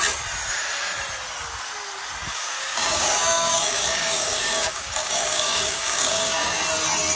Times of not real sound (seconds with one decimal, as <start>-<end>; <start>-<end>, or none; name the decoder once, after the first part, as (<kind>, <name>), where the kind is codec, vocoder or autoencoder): 2.3-6.6 (codec, DAC)